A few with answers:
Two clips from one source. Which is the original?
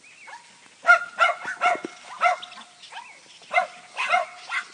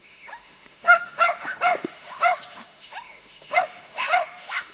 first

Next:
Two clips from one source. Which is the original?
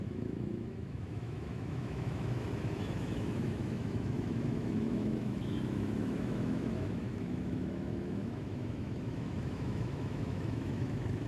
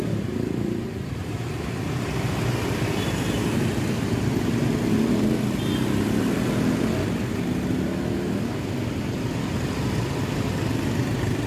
second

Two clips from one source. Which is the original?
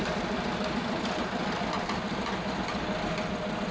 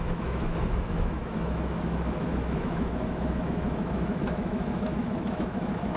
first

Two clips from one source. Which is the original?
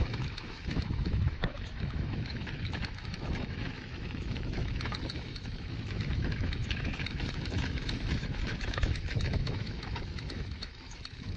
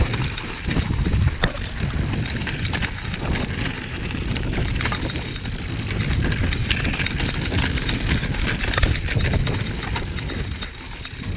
second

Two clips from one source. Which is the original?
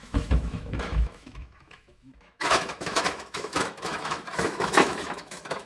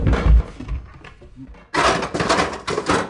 second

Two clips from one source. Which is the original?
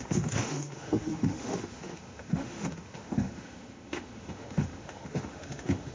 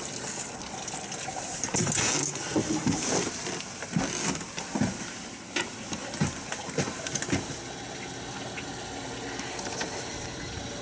second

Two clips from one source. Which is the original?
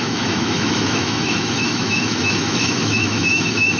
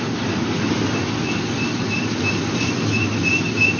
second